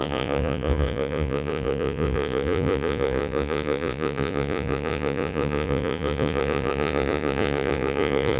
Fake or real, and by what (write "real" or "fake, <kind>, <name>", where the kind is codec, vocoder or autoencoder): fake, vocoder, Vocos